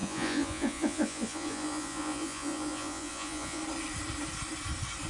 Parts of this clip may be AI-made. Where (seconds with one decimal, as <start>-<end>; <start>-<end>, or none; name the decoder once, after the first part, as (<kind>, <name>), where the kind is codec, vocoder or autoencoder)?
0.0-3.6 (vocoder, Vocos)